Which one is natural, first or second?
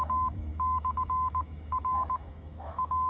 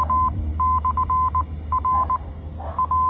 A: second